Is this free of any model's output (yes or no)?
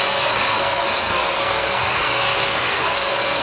no